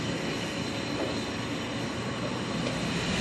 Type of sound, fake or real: real